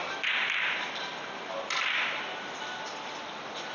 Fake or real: real